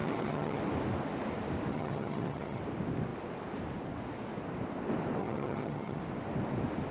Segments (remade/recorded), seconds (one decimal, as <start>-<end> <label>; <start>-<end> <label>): 0.0-0.6 remade; 0.6-1.7 recorded; 1.7-2.6 remade; 2.6-5.2 recorded; 5.2-6.0 remade; 6.0-6.9 recorded